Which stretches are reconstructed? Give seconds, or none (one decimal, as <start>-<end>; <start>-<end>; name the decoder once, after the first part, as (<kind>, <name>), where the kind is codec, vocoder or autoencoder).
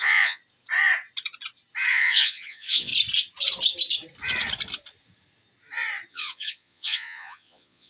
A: 0.0-0.4 (vocoder, Vocos); 1.9-2.9; 6.1-7.9